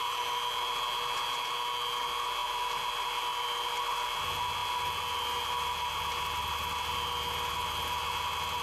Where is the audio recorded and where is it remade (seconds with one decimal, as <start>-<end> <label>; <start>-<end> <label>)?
0.0-8.6 recorded